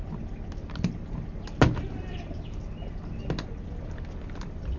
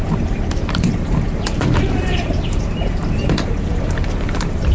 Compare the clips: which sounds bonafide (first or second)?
first